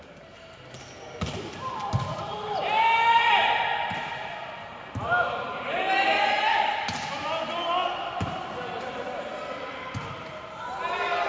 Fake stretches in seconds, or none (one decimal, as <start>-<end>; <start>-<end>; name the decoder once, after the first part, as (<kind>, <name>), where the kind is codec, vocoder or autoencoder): none